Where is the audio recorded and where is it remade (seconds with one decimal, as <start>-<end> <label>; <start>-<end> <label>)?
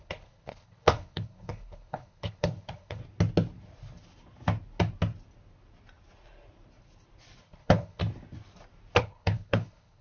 0.0-3.0 remade; 3.0-7.4 recorded; 7.4-8.0 remade; 8.0-9.0 recorded; 9.0-10.0 remade